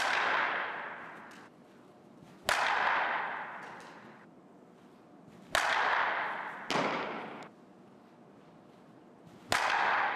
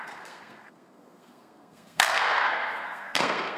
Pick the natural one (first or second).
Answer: first